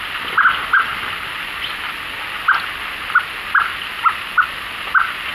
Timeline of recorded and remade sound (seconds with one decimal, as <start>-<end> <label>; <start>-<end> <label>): 0.0-5.3 recorded